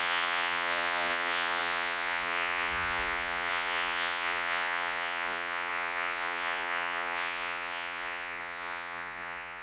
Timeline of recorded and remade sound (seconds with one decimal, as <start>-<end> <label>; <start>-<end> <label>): 0.0-9.6 remade